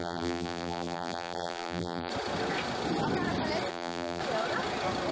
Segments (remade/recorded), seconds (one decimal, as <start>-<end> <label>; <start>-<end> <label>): 0.0-2.1 remade; 2.1-3.7 recorded; 3.7-4.2 remade; 4.2-5.1 recorded